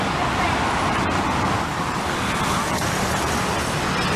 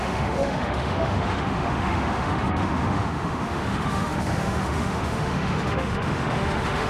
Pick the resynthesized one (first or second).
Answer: second